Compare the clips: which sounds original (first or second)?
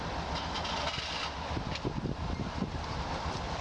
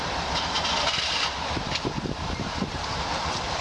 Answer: first